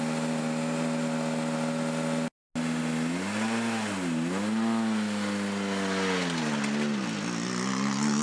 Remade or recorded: recorded